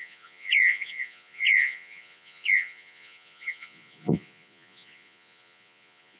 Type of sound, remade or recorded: remade